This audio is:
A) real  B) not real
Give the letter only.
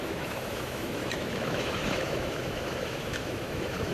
B